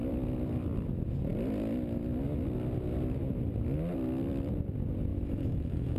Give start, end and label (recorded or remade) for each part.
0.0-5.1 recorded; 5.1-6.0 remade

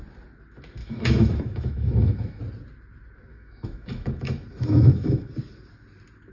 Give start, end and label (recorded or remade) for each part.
0.0-0.8 recorded; 0.8-2.4 remade; 2.4-3.3 recorded; 3.3-5.3 remade; 5.3-6.3 recorded